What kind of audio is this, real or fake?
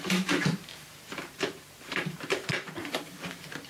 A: fake